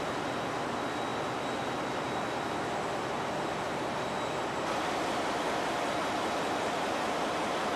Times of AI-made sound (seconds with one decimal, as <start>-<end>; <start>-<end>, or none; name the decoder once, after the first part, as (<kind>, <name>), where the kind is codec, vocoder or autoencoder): none